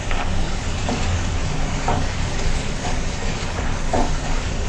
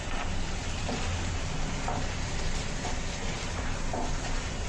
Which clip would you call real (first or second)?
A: second